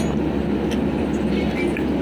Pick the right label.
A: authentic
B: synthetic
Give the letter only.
A